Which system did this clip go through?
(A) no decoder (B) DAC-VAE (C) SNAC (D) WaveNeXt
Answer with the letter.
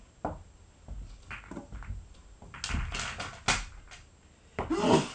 A